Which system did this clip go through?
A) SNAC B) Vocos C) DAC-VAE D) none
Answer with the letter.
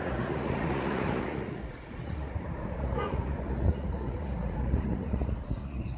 B